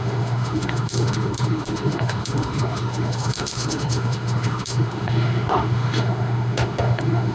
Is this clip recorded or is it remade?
remade